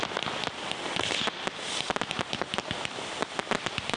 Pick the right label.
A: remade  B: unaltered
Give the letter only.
B